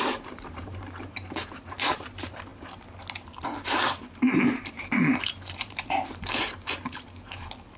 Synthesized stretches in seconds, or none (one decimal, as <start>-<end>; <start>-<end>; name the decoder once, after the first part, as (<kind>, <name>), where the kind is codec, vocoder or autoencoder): 0.0-7.8 (vocoder, BigVGAN v2)